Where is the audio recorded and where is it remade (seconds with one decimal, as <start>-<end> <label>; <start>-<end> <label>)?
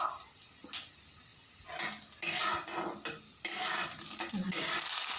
0.0-1.3 recorded; 1.3-3.6 remade; 3.6-5.2 recorded